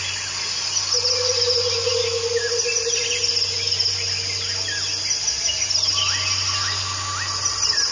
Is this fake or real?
real